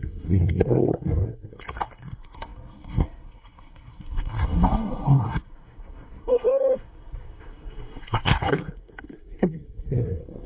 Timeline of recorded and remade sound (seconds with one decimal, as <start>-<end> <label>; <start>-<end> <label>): 0.0-10.5 remade